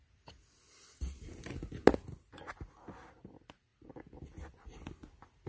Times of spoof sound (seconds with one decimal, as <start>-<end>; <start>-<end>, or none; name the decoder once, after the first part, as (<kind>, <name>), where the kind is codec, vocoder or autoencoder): none